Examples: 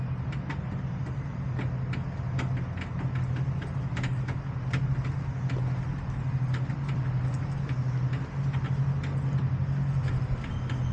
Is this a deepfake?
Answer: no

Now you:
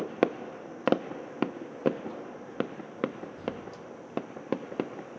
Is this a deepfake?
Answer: no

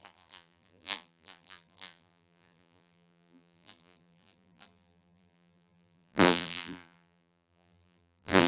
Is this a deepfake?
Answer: yes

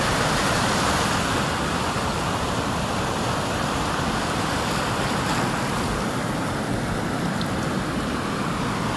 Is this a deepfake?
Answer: no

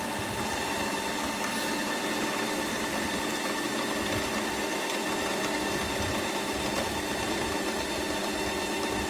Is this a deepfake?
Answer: no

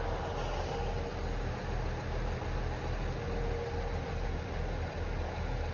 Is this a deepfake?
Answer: no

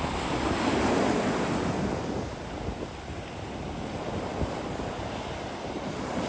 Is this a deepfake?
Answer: no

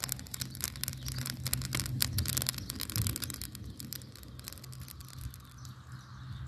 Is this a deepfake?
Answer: no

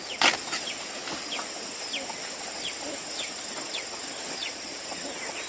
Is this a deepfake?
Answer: no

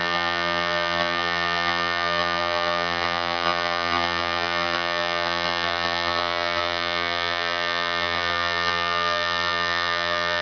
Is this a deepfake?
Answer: yes